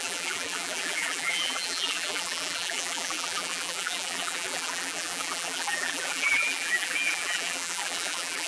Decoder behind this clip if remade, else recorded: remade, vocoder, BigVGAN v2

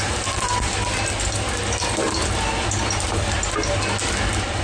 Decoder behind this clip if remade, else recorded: recorded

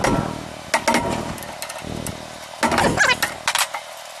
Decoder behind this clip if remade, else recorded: recorded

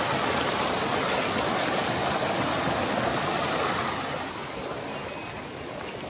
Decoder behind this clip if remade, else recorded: recorded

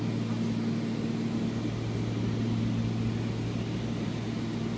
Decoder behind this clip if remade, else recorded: recorded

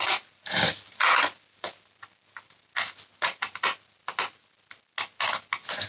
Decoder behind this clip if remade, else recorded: recorded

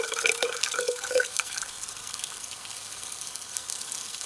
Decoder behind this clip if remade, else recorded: remade, codec, SNAC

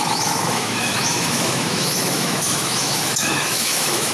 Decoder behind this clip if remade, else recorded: remade, autoencoder, DAC-VAE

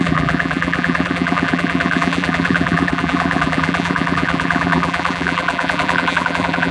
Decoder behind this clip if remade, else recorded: remade, vocoder, BigVGAN v2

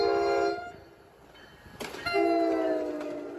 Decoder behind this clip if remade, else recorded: recorded